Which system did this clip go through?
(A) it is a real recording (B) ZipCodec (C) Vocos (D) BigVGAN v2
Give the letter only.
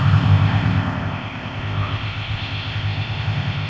B